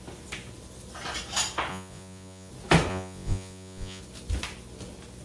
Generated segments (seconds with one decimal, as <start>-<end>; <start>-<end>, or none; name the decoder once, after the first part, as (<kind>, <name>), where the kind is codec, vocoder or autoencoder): 1.7-2.5 (vocoder, Vocos); 2.9-4.0